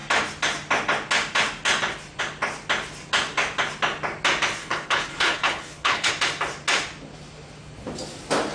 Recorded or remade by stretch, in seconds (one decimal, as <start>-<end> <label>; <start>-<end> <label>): 0.0-4.6 recorded; 4.6-6.1 remade; 6.1-8.5 recorded